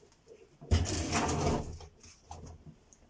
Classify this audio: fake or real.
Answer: real